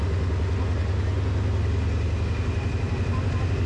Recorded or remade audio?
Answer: recorded